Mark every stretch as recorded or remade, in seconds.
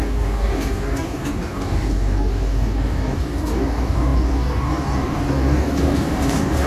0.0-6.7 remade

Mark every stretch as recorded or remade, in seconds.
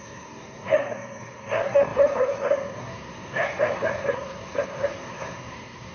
0.0-5.9 remade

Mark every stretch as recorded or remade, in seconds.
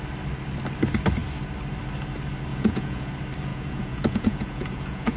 0.0-2.5 recorded; 2.5-3.1 remade; 3.1-3.5 recorded; 3.5-5.2 remade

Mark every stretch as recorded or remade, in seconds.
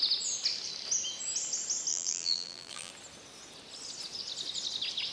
0.0-1.9 recorded; 1.9-2.9 remade; 2.9-5.1 recorded